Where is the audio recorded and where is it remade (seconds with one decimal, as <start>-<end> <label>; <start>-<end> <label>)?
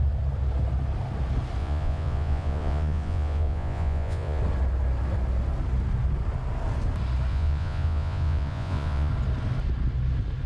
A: 0.0-1.6 recorded; 1.6-4.4 remade; 4.4-7.3 recorded; 7.3-9.1 remade; 9.1-10.5 recorded